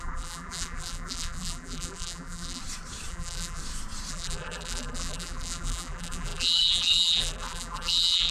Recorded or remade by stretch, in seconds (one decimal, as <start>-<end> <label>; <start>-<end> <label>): 0.0-2.6 remade; 2.6-3.1 recorded; 3.1-3.6 remade; 3.6-4.1 recorded; 4.1-8.3 remade